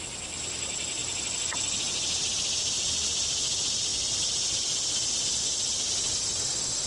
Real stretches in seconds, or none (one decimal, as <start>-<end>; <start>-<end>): 0.0-6.9